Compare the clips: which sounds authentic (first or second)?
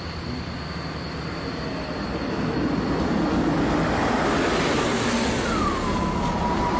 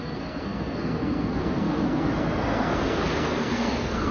first